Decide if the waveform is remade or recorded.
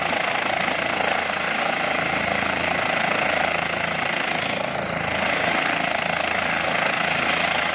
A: recorded